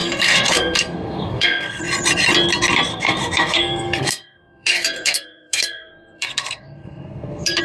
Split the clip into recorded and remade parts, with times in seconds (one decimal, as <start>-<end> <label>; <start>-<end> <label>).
0.0-1.8 remade; 1.8-2.9 recorded; 2.9-7.6 remade